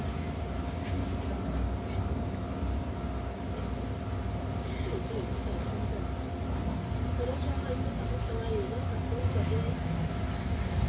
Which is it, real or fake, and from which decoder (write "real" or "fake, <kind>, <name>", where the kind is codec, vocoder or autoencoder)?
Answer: real